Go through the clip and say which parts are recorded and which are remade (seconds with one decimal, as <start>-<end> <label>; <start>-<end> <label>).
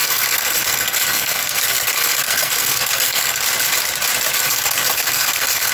0.0-3.4 remade; 3.4-4.4 recorded; 4.4-5.7 remade